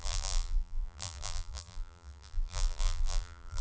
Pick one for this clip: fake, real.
fake